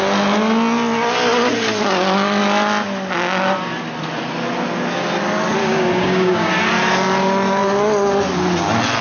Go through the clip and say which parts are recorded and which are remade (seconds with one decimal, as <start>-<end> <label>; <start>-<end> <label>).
0.0-5.6 recorded; 5.6-6.5 remade; 6.5-9.0 recorded